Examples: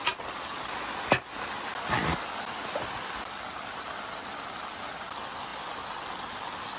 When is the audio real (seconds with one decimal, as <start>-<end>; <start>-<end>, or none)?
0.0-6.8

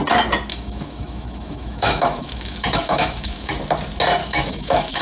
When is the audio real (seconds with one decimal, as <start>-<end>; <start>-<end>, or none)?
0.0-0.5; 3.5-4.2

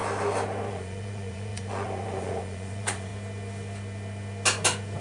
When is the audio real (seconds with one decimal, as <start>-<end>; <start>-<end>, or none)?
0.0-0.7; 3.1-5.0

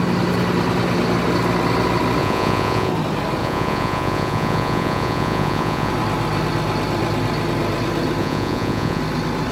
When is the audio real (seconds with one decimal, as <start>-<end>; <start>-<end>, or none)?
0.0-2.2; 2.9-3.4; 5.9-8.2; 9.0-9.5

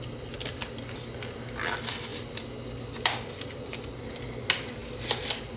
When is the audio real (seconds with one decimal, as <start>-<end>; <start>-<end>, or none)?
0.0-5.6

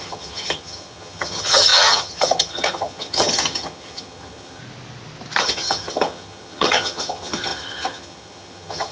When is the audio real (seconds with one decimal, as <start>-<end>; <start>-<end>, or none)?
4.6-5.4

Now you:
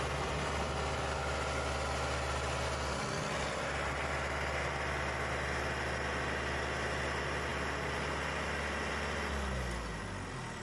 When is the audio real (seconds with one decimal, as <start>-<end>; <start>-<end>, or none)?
0.0-10.6

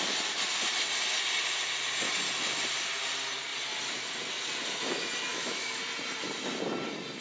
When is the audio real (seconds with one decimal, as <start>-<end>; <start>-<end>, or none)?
0.0-5.3; 5.8-7.2